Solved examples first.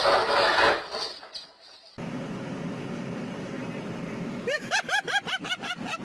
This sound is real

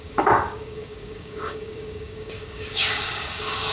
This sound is fake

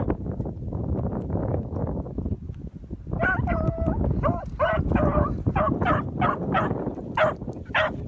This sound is real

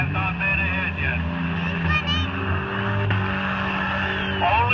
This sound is real